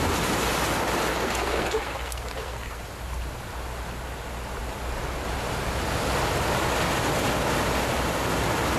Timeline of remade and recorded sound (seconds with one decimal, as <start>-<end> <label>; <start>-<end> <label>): 0.0-1.1 recorded; 1.1-2.8 remade; 2.8-8.8 recorded

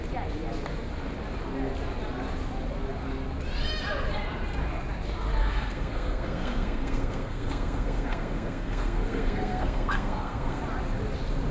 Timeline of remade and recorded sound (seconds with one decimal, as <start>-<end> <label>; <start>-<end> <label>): 0.0-5.4 recorded; 5.4-10.6 remade; 10.6-11.5 recorded

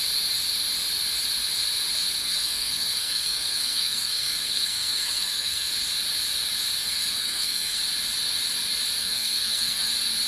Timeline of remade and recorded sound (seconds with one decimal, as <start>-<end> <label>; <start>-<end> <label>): 0.0-2.2 recorded; 2.2-5.7 remade; 5.7-6.8 recorded; 6.8-7.8 remade; 7.8-9.0 recorded; 9.0-9.9 remade; 9.9-10.3 recorded

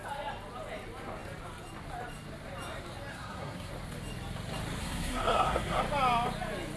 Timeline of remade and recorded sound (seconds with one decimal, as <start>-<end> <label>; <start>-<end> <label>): 0.0-3.1 recorded; 3.1-3.7 remade; 3.7-4.8 recorded; 4.8-5.8 remade; 5.8-6.8 recorded

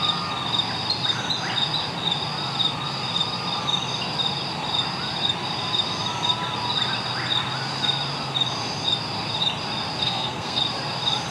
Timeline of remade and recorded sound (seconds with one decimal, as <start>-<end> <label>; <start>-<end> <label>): 0.0-10.0 recorded; 10.0-10.6 remade; 10.6-11.3 recorded

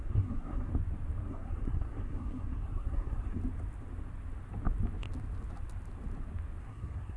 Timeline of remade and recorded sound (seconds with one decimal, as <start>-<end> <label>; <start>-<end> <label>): 0.0-0.7 remade; 0.7-1.3 recorded; 1.3-3.4 remade; 3.4-6.6 recorded; 6.6-7.2 remade